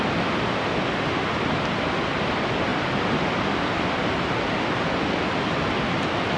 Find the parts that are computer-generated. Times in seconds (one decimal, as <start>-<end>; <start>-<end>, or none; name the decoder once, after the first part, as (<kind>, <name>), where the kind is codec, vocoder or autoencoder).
none